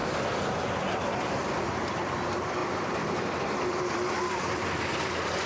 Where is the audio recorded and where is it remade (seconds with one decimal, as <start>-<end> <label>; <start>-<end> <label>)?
0.0-1.4 recorded; 1.4-5.5 remade